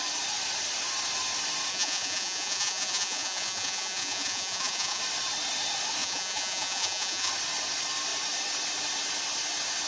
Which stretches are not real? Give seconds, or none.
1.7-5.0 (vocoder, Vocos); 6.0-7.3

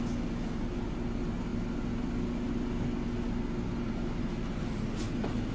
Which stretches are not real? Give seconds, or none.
none